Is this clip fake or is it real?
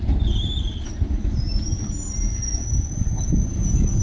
real